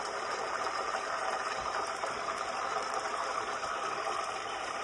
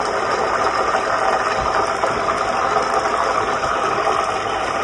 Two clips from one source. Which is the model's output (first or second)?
first